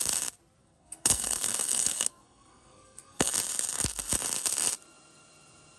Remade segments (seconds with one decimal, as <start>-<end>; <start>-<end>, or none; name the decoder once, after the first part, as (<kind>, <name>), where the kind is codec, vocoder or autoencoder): 0.6-3.3 (codec, SNAC)